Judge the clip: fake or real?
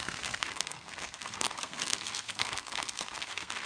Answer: fake